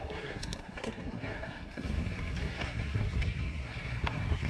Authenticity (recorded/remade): remade